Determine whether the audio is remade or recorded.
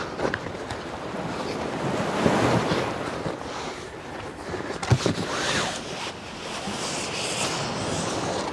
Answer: recorded